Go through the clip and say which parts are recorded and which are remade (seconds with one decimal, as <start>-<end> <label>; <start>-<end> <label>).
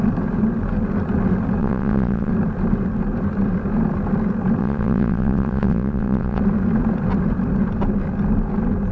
0.0-1.6 recorded; 1.6-2.3 remade; 2.3-4.6 recorded; 4.6-6.4 remade; 6.4-8.9 recorded